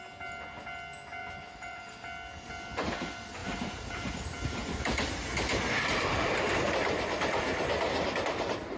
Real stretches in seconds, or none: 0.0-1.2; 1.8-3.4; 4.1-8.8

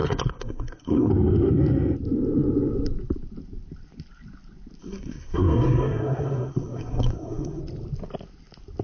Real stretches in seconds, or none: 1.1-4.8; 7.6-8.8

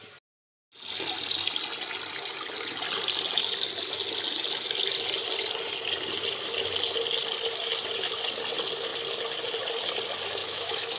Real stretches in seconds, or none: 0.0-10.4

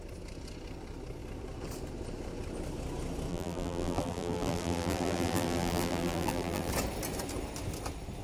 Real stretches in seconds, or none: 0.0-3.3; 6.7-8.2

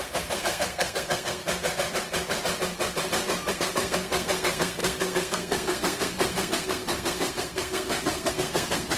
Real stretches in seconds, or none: 1.4-3.5